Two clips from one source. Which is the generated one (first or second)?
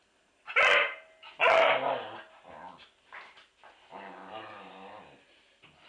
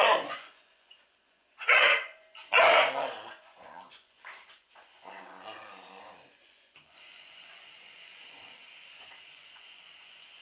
second